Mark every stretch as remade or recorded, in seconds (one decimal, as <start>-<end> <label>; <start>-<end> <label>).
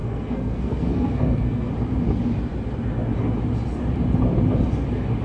0.0-1.7 remade; 1.7-5.2 recorded